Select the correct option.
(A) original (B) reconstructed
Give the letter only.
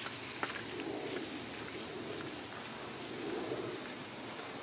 A